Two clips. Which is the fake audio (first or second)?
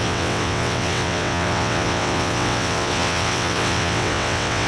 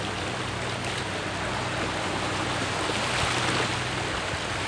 first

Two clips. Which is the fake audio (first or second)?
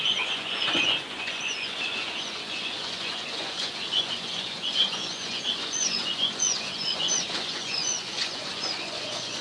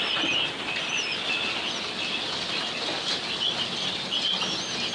first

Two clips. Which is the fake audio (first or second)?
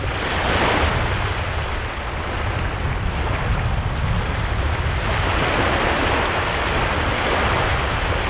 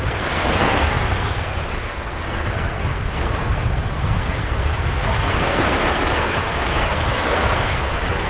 second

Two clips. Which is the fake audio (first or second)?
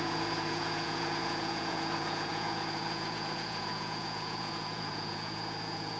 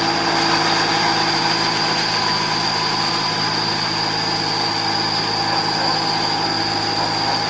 first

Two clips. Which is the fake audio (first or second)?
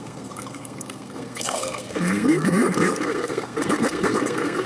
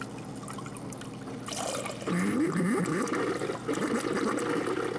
first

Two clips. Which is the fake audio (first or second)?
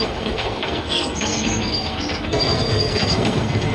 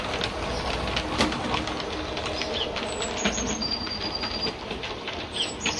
first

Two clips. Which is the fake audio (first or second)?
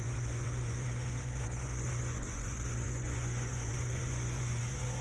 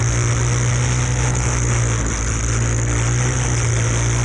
first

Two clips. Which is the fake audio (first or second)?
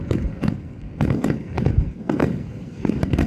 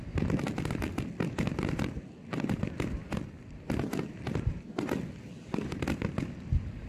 first